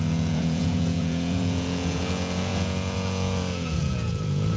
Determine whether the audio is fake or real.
fake